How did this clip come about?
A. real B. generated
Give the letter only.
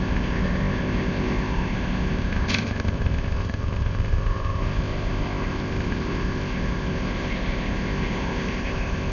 B